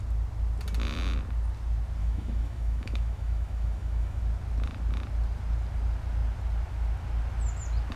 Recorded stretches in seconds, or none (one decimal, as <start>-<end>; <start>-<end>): 0.0-2.0; 4.2-8.0